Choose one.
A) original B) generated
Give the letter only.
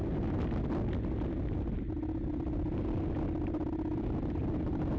A